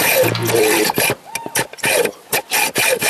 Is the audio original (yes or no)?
yes